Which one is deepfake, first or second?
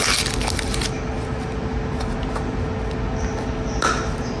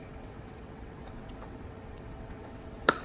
second